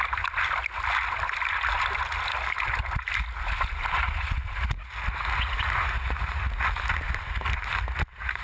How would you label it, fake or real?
real